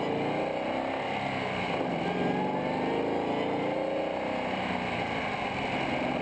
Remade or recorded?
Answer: recorded